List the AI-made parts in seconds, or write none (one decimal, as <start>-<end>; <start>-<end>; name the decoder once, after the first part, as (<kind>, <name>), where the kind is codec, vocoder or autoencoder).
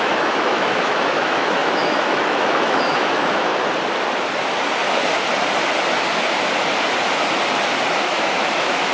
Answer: 0.0-3.5 (autoencoder, DAC-VAE); 8.0-8.9